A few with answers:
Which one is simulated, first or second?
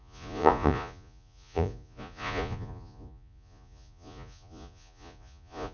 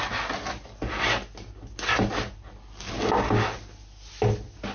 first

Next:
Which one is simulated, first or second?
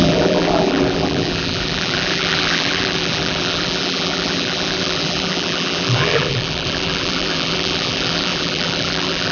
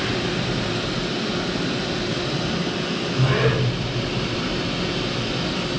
first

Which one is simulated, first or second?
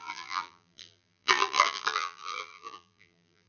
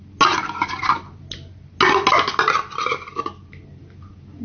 first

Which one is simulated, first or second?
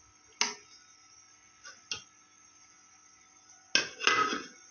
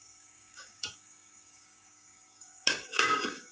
second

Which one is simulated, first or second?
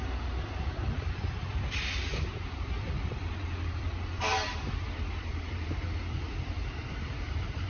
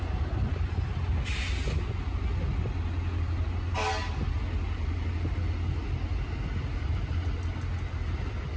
first